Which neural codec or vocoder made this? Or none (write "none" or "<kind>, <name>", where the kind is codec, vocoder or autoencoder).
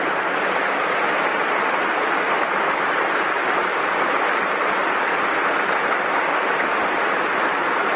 none